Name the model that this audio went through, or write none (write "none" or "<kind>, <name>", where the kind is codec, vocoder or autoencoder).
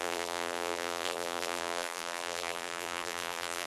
vocoder, BigVGAN v2